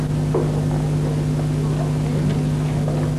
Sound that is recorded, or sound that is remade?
recorded